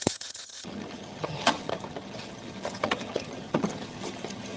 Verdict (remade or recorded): remade